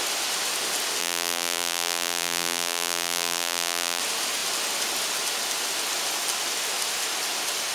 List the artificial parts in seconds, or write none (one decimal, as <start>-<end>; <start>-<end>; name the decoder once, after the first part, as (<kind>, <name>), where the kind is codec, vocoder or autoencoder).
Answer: 1.0-4.0 (vocoder, BigVGAN v2)